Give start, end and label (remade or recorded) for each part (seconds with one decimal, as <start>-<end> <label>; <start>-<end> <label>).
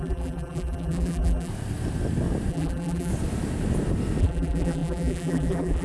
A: 0.0-1.5 remade; 1.5-2.5 recorded; 2.5-3.1 remade; 3.1-4.2 recorded; 4.2-5.8 remade